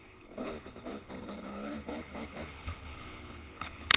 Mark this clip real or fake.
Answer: fake